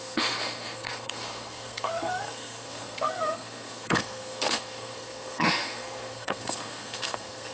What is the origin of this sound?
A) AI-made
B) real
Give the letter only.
A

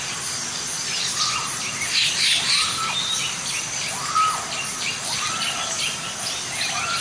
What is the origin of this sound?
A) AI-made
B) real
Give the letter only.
A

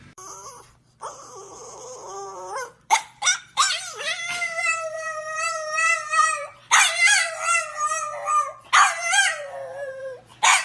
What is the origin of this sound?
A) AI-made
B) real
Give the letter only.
A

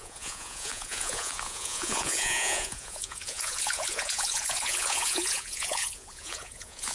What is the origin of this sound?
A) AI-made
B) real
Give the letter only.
A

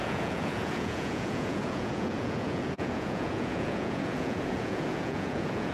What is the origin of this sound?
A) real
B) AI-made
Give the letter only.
B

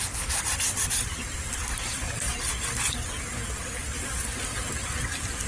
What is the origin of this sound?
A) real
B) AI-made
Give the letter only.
A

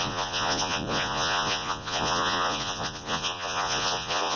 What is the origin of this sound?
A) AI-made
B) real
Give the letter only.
A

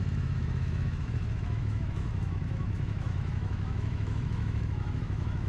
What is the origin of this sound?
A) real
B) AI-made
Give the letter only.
B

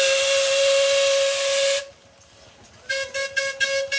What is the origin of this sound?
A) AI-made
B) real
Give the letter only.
B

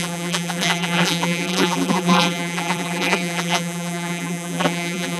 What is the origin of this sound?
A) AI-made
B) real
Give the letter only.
A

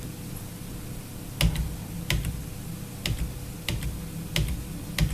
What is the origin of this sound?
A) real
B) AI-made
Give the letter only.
A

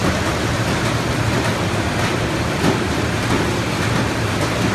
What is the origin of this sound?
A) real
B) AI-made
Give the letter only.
A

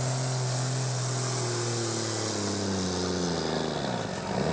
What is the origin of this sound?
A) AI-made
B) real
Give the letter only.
B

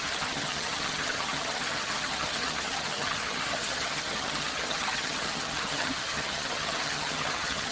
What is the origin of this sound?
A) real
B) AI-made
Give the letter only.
B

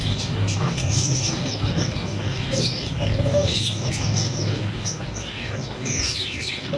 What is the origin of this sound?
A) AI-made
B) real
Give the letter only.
A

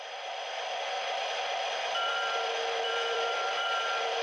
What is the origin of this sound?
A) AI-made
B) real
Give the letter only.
A